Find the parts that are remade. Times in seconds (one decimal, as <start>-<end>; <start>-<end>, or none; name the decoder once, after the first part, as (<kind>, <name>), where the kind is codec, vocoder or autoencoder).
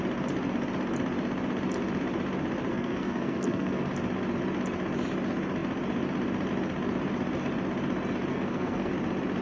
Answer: 2.7-3.9 (codec, SNAC); 8.3-8.9